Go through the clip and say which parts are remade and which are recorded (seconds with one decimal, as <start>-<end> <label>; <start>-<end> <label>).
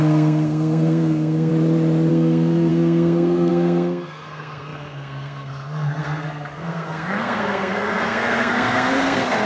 0.0-1.5 remade; 1.5-2.1 recorded; 2.1-9.5 remade